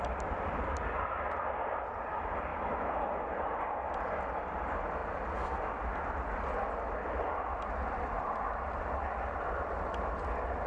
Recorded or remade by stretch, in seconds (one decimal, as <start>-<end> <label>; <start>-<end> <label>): 0.0-10.7 recorded